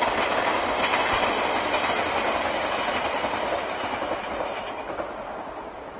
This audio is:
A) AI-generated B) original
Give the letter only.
B